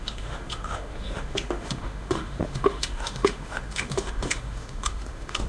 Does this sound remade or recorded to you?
remade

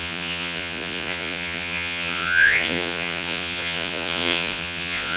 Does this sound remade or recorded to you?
remade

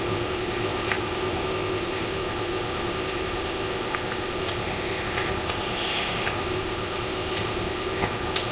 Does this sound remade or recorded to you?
remade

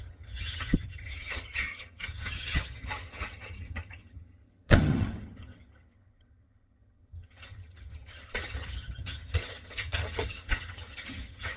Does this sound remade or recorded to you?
remade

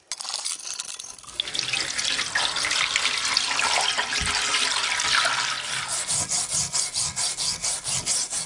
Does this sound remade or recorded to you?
recorded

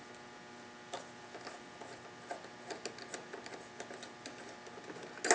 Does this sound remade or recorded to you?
recorded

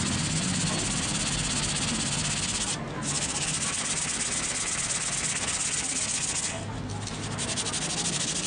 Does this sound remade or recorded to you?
recorded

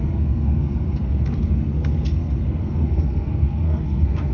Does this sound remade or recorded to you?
remade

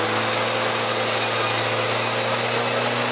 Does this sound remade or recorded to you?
recorded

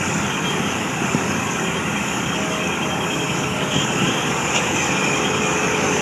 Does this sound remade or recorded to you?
remade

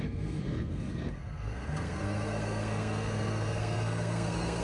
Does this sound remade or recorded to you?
remade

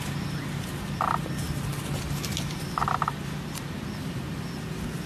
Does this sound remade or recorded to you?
recorded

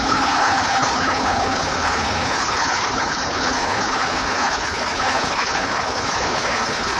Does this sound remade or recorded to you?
remade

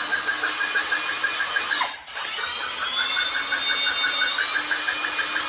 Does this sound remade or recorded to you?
recorded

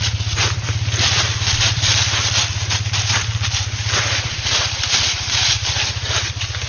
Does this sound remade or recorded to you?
remade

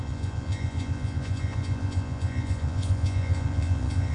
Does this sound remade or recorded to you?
remade